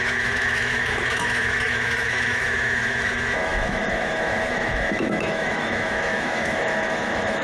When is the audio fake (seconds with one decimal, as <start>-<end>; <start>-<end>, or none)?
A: 0.0-7.4